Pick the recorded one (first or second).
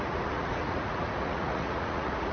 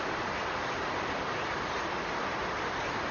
second